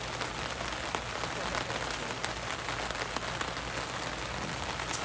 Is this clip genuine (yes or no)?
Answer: yes